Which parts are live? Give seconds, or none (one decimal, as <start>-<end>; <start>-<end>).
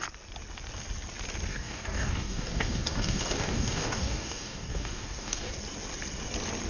0.0-1.5; 5.5-6.7